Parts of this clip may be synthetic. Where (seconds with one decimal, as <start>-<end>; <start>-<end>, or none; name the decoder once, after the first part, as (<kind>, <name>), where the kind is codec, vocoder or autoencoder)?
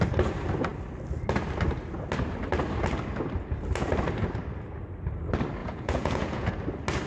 5.6-6.5 (vocoder, Vocos)